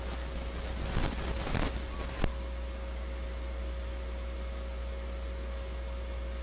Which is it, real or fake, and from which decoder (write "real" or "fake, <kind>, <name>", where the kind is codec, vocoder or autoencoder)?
real